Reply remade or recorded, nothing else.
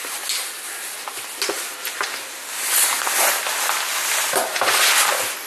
recorded